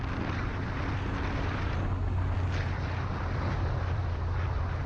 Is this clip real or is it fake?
real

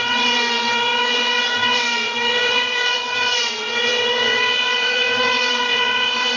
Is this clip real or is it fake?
fake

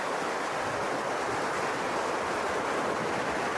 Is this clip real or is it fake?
real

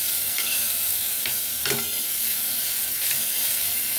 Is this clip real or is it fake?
fake